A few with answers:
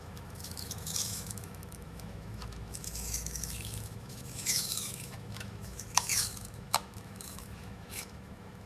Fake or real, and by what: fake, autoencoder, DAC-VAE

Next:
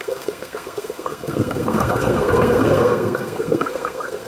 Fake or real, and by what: fake, codec, SNAC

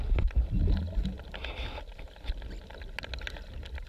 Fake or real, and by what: real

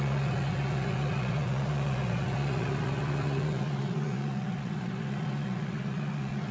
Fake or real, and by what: fake, vocoder, Vocos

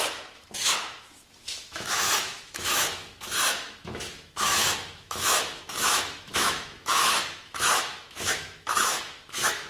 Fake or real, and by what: fake, autoencoder, DAC-VAE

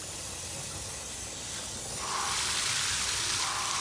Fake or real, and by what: real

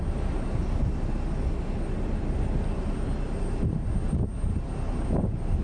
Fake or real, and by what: real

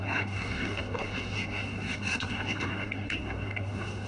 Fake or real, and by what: fake, codec, SNAC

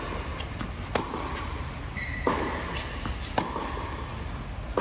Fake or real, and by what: real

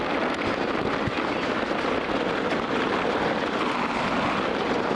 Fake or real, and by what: real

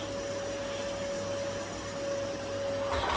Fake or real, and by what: real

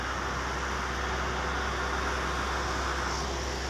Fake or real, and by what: real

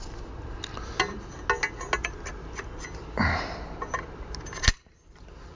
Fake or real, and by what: real